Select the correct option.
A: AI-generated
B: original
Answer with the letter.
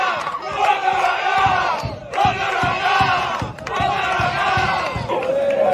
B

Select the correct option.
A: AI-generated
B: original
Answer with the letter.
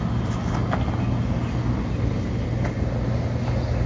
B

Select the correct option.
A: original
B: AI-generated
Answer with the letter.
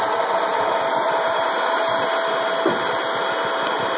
A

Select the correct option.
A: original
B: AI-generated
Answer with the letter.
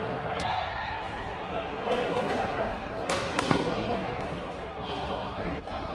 B